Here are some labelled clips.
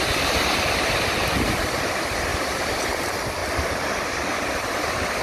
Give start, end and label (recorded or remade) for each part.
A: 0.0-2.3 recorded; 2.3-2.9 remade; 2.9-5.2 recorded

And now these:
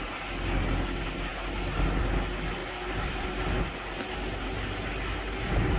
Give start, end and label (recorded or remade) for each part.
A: 0.0-2.6 recorded; 2.6-3.3 remade; 3.3-5.8 recorded

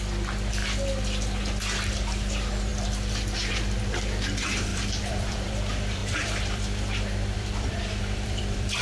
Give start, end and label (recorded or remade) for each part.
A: 0.0-0.6 remade; 0.6-1.9 recorded; 1.9-2.7 remade; 2.7-3.5 recorded; 3.5-8.8 remade

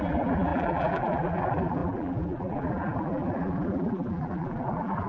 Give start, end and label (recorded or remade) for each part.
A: 0.0-5.1 remade

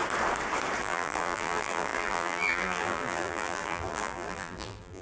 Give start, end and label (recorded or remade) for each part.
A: 0.0-0.8 recorded; 0.8-5.0 remade

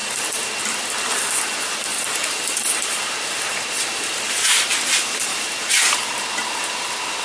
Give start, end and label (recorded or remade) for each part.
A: 0.0-1.9 recorded; 1.9-4.7 remade; 4.7-5.3 recorded; 5.3-5.9 remade; 5.9-7.2 recorded